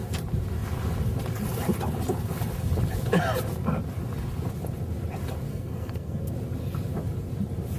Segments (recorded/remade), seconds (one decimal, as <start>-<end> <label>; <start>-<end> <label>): 0.0-5.5 recorded; 5.5-6.3 remade; 6.3-7.8 recorded